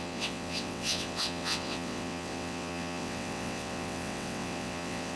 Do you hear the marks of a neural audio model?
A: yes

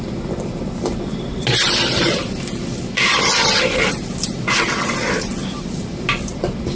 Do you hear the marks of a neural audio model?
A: no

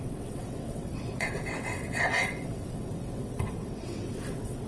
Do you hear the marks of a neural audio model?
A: yes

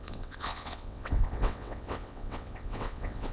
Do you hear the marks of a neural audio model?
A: yes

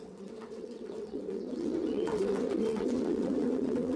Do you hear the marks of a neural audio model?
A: yes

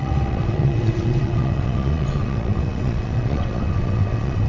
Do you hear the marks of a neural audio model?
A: yes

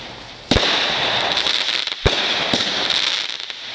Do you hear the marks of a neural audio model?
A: no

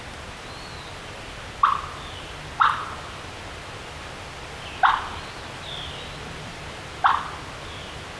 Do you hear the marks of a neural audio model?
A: no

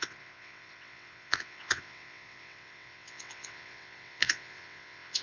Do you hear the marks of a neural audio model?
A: yes